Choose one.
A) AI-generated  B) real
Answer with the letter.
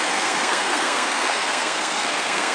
A